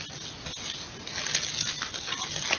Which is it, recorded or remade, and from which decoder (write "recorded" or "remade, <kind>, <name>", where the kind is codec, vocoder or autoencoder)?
recorded